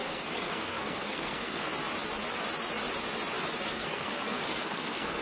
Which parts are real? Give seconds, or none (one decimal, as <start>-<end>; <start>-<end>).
1.7-3.7